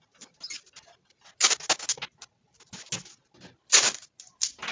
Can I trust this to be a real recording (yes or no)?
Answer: yes